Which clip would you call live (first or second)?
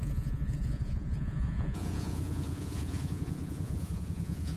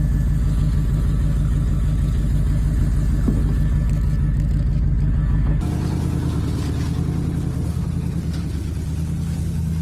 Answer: second